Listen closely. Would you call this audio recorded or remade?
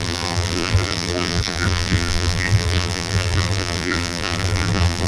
remade